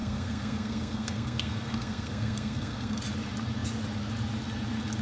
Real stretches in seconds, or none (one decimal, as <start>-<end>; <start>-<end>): 3.0-5.0